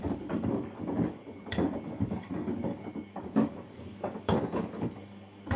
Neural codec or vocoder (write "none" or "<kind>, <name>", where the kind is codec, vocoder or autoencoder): codec, DAC